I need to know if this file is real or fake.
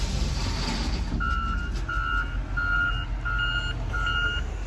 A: real